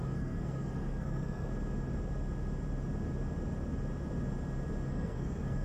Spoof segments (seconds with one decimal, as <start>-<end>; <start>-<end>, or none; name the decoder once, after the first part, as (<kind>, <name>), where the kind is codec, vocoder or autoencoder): 0.0-1.5 (codec, SNAC); 4.9-5.6